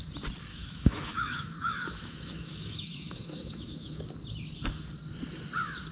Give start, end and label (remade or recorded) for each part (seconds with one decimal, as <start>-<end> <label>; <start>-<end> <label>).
0.0-0.5 recorded; 0.5-4.0 remade; 4.0-5.9 recorded